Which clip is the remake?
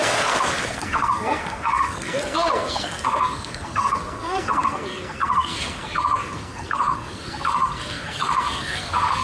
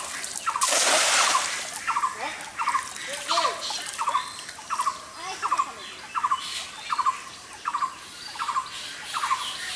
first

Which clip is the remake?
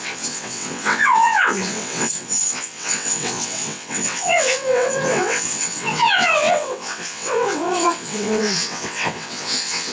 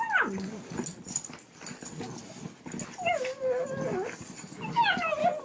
first